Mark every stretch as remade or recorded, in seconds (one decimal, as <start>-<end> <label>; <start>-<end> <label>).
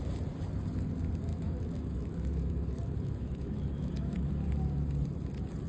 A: 0.0-1.3 recorded; 1.3-4.3 remade; 4.3-5.7 recorded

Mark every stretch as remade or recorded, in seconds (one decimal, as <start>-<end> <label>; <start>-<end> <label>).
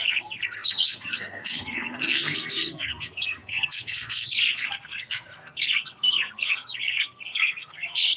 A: 0.0-8.2 remade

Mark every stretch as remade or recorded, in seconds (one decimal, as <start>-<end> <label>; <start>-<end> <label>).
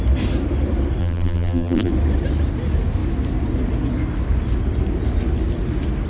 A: 0.0-1.0 recorded; 1.0-1.9 remade; 1.9-6.1 recorded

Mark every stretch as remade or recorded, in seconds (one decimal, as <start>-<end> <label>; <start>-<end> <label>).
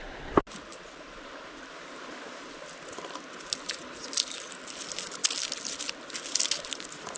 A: 0.0-7.2 recorded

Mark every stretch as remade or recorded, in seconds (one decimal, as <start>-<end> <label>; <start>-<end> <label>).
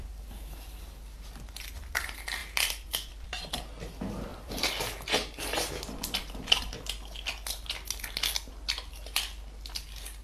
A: 0.0-2.4 recorded; 2.4-3.5 remade; 3.5-4.3 recorded; 4.3-6.3 remade; 6.3-10.2 recorded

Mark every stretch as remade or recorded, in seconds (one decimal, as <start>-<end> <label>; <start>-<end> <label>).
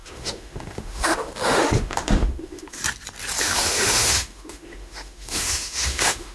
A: 0.0-2.8 remade; 2.8-3.4 recorded; 3.4-6.3 remade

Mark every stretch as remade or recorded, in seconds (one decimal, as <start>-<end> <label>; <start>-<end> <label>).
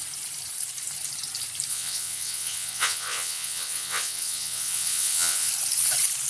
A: 0.0-1.7 recorded; 1.7-5.5 remade; 5.5-6.3 recorded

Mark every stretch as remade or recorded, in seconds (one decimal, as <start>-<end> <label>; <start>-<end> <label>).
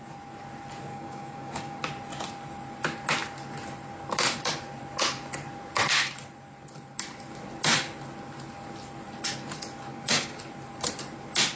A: 0.0-0.9 recorded; 0.9-1.8 remade; 1.8-9.9 recorded; 9.9-10.4 remade; 10.4-11.6 recorded